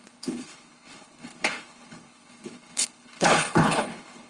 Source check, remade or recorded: remade